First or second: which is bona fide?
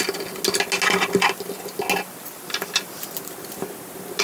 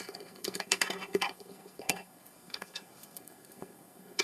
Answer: first